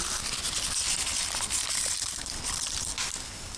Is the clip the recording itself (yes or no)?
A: yes